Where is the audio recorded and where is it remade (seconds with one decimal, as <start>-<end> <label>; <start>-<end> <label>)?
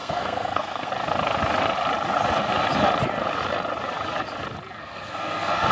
0.0-0.9 remade; 0.9-4.8 recorded; 4.8-5.7 remade